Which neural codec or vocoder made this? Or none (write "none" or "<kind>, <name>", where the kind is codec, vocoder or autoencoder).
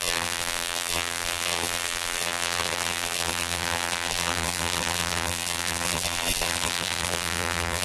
vocoder, BigVGAN v2